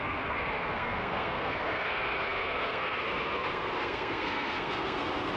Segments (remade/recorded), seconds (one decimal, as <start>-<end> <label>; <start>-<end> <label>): 0.0-5.4 remade